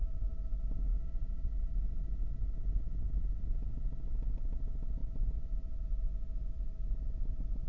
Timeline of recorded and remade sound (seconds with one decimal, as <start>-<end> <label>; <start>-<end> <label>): 0.0-7.7 recorded